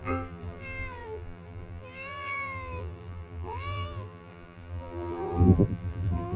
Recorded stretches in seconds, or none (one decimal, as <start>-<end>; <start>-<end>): none